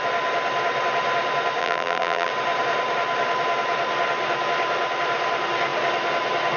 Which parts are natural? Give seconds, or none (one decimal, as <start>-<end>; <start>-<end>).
0.0-1.6; 2.3-6.6